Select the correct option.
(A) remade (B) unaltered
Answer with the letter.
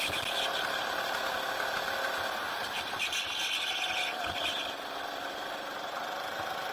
B